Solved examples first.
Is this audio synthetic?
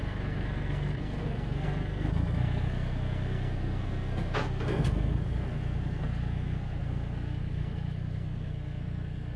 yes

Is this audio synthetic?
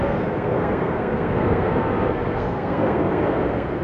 yes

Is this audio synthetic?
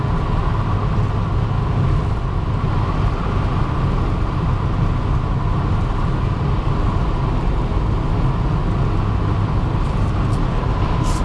no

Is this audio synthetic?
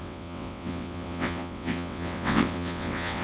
yes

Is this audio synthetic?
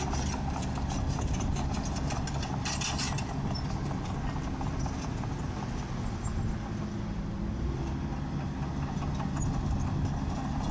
no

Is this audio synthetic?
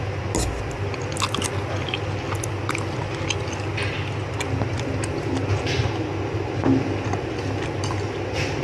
no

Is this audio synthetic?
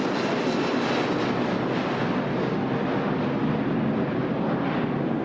no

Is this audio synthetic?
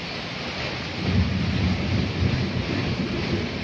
no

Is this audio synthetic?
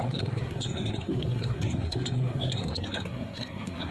yes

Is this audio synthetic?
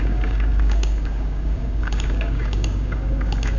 yes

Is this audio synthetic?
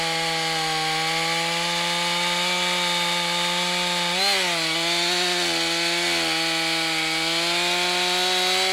no